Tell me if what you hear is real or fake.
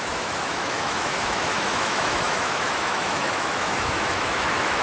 fake